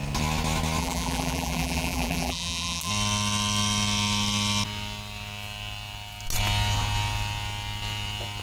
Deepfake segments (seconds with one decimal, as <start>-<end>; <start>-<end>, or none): 0.8-2.9